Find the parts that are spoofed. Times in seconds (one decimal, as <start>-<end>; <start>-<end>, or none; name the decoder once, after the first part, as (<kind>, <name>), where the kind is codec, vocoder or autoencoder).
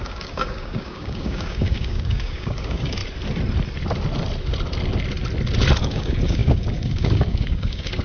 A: 0.0-3.0 (codec, DAC); 5.8-8.0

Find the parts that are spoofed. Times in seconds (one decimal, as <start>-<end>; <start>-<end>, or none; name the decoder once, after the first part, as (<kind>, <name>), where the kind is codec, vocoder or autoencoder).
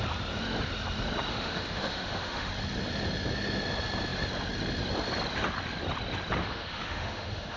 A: 1.3-2.5 (autoencoder, DAC-VAE); 6.4-7.6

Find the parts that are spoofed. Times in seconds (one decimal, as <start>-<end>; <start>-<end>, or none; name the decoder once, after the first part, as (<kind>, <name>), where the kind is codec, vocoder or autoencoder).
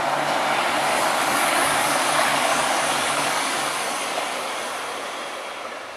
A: 0.9-4.5 (codec, DAC)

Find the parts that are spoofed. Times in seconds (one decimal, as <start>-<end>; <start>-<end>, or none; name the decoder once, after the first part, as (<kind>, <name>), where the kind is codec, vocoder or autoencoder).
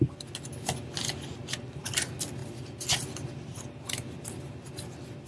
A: none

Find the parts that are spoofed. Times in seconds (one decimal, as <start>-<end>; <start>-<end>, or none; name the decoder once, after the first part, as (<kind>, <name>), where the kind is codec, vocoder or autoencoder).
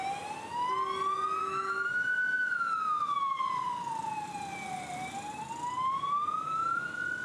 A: 1.4-3.4 (autoencoder, DAC-VAE)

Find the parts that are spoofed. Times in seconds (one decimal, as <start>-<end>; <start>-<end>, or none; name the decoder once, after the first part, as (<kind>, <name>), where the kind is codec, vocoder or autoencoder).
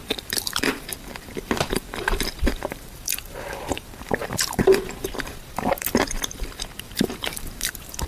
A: 0.0-8.1 (vocoder, BigVGAN v2)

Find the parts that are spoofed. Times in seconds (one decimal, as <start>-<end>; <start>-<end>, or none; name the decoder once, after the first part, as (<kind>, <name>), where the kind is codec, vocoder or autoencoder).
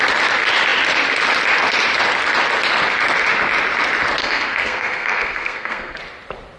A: 4.2-6.0 (codec, SNAC)